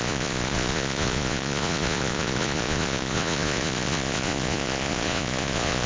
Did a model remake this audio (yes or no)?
yes